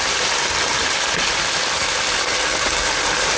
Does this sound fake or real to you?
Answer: real